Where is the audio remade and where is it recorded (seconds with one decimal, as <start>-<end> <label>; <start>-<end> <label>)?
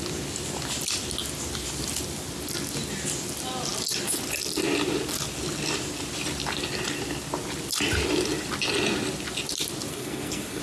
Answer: 0.0-9.9 recorded; 9.9-10.6 remade